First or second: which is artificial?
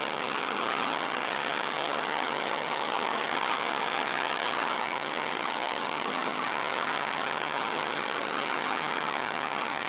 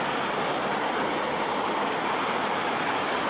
first